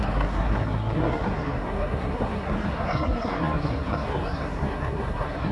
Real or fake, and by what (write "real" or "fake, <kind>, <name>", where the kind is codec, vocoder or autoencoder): fake, codec, SNAC